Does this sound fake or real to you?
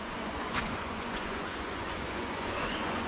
fake